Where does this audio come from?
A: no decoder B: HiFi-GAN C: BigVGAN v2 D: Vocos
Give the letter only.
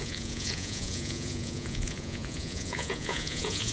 D